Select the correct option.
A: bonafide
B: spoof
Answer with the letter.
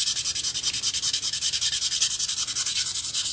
A